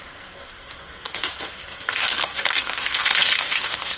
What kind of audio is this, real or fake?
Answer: fake